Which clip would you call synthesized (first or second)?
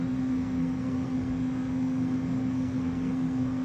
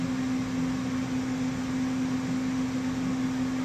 first